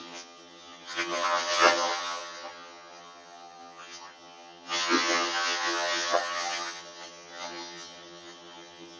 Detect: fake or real fake